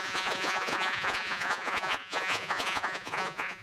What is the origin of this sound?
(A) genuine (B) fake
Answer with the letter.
B